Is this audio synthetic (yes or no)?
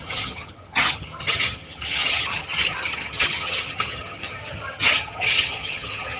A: yes